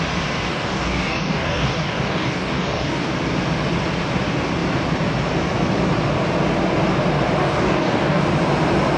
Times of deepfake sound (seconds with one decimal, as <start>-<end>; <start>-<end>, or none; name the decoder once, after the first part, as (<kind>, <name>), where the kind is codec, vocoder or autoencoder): 0.5-3.1 (codec, DAC); 7.4-8.2